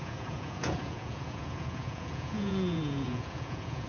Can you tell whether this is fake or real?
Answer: fake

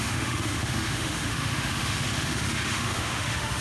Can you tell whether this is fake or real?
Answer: fake